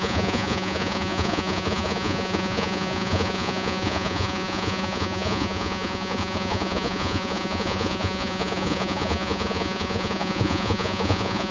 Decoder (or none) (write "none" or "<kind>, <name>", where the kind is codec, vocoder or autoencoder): vocoder, Vocos